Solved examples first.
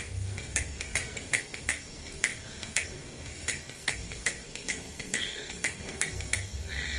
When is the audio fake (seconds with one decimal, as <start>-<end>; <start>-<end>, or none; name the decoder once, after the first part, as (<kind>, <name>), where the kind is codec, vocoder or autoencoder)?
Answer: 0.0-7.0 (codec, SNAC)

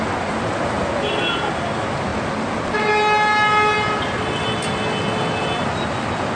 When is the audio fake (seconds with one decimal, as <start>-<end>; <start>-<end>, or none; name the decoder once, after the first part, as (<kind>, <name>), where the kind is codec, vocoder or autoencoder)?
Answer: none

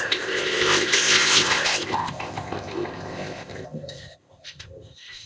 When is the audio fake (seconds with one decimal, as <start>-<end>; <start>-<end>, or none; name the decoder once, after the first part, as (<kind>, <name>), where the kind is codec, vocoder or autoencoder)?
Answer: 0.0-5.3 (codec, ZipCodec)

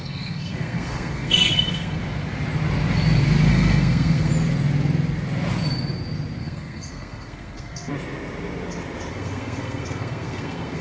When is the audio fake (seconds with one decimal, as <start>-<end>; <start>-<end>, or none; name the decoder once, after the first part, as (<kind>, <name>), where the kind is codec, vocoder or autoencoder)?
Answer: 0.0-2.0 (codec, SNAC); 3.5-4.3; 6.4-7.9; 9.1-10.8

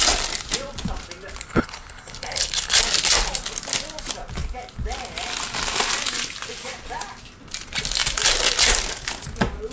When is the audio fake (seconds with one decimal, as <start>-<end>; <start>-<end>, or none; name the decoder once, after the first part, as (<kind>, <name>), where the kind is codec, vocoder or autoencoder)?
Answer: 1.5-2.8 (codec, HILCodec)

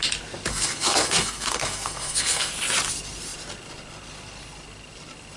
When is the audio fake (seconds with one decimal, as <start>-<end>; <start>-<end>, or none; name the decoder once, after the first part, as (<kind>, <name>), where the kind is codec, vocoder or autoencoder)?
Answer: 0.5-2.5 (codec, SNAC)

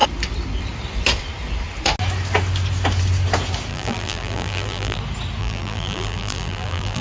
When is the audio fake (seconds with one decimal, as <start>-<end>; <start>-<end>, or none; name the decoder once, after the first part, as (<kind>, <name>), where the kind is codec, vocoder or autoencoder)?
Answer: 3.7-5.0 (vocoder, BigVGAN v2); 5.4-7.0